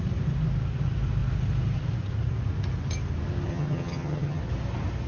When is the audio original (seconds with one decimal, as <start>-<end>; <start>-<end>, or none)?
0.0-3.5; 4.4-5.1